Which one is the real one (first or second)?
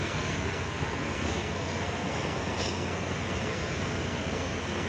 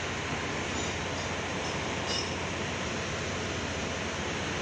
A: second